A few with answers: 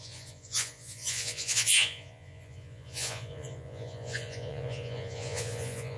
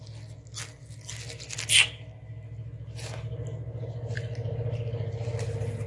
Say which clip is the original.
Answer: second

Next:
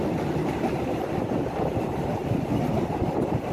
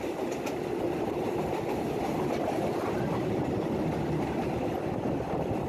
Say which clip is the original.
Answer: second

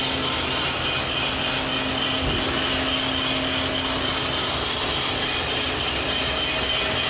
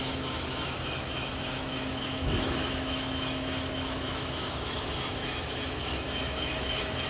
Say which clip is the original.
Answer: first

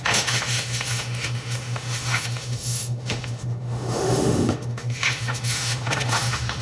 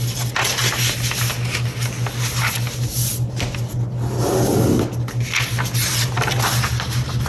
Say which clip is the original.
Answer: second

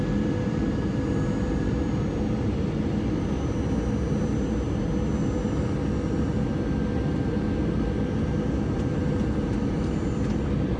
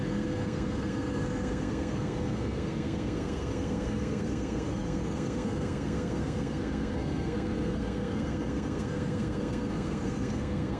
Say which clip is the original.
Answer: first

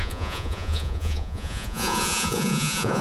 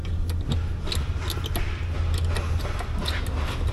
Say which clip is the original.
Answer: second